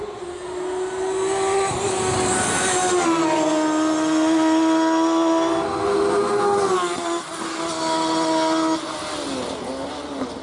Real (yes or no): yes